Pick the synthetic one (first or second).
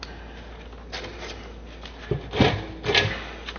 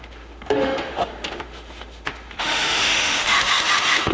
second